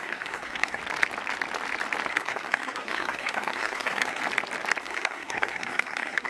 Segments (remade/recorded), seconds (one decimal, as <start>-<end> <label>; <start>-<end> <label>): 0.0-0.8 remade; 0.8-2.1 recorded; 2.1-4.2 remade; 4.2-4.8 recorded; 4.8-6.3 remade